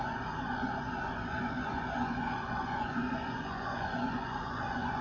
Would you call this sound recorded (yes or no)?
no